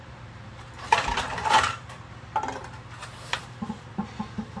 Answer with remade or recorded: remade